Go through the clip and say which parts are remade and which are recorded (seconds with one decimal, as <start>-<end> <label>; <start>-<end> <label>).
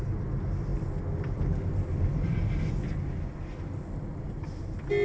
0.0-5.0 recorded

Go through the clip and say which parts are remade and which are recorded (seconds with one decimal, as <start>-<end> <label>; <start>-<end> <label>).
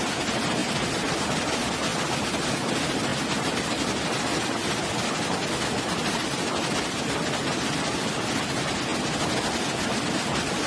0.0-10.7 recorded